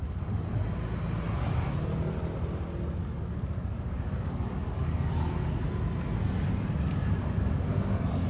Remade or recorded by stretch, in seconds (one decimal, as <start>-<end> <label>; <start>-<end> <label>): 0.0-3.0 recorded; 3.0-5.1 remade; 5.1-8.3 recorded